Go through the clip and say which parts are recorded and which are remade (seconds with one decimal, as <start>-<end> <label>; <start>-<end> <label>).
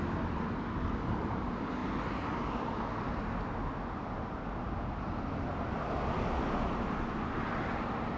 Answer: 0.0-8.2 recorded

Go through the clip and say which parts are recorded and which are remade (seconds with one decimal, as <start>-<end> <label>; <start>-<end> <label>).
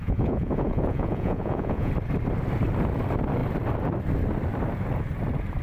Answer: 0.0-1.9 remade; 1.9-5.6 recorded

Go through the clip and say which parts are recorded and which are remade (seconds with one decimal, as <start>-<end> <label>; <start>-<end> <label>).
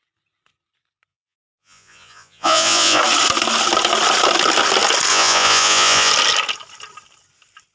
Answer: 0.0-1.1 recorded; 1.1-3.0 remade; 3.0-5.1 recorded; 5.1-6.1 remade; 6.1-7.7 recorded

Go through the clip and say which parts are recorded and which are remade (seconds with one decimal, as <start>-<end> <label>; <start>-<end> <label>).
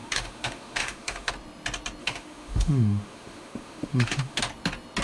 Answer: 0.0-1.3 remade; 1.3-2.0 recorded; 2.0-4.4 remade; 4.4-5.0 recorded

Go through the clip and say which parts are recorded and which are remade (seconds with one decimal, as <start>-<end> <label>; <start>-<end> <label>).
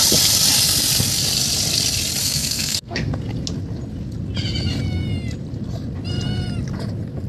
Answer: 0.0-2.2 recorded; 2.2-3.1 remade; 3.1-7.3 recorded